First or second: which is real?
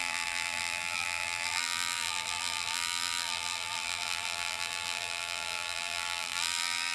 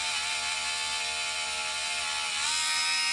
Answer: second